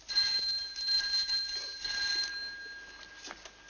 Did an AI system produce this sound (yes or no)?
no